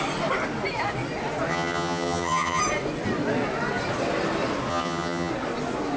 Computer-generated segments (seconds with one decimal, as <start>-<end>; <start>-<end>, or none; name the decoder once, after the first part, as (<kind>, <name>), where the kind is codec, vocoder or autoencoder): 1.5-2.6 (vocoder, HiFi-GAN); 4.7-5.3